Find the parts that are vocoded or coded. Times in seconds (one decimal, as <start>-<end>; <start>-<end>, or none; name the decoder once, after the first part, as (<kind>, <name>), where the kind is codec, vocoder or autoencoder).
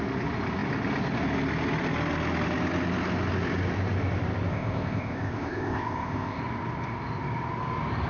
4.5-6.4 (codec, ZipCodec)